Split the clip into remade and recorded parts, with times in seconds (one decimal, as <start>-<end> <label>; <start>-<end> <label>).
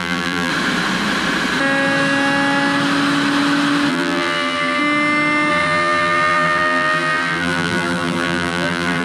0.0-0.5 remade; 0.5-3.9 recorded; 3.9-4.8 remade; 4.8-5.5 recorded; 5.5-9.0 remade